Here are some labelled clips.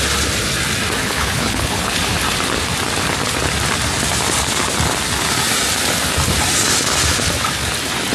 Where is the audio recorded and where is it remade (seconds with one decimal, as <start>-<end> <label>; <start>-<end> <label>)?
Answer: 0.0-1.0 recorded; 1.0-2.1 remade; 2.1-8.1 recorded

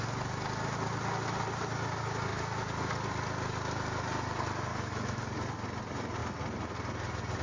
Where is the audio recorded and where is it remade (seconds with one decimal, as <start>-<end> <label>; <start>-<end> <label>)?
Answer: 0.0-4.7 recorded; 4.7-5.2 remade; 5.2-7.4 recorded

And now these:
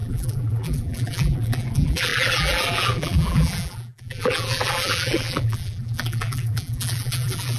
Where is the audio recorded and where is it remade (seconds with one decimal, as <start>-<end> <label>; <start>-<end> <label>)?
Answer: 0.0-7.6 remade

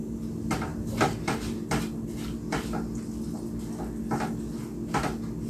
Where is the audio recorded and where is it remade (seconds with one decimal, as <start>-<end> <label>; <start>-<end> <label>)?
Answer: 0.0-5.5 recorded